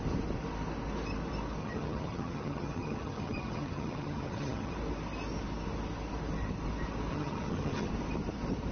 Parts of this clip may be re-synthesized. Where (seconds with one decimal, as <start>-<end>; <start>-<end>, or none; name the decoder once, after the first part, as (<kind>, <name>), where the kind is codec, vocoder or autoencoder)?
1.6-4.7 (vocoder, HiFi-GAN); 7.1-7.9